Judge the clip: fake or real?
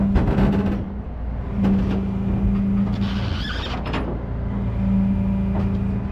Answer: real